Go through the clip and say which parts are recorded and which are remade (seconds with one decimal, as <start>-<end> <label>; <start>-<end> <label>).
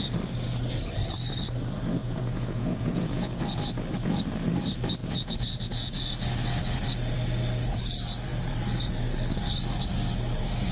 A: 0.0-2.0 recorded; 2.0-3.4 remade; 3.4-5.0 recorded; 5.0-6.0 remade; 6.0-10.7 recorded